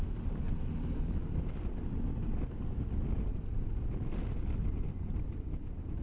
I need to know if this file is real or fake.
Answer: real